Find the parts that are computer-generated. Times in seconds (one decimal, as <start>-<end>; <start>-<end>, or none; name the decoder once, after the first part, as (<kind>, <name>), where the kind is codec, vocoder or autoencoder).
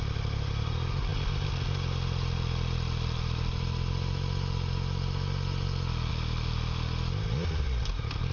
none